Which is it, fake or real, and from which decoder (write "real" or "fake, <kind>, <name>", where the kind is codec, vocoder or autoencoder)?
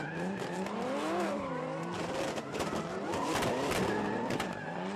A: fake, vocoder, BigVGAN v2